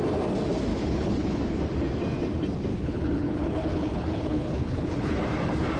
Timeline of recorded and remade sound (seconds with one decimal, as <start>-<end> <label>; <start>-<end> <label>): 0.0-0.7 recorded; 0.7-1.4 remade; 1.4-2.7 recorded; 2.7-5.2 remade; 5.2-5.8 recorded